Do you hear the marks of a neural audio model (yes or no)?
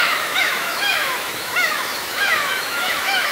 yes